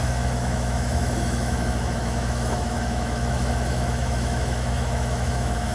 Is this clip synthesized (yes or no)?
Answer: yes